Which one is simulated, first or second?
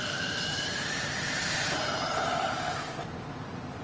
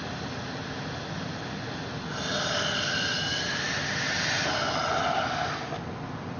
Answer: first